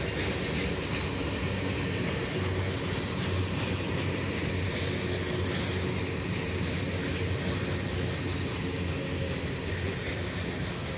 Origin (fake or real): real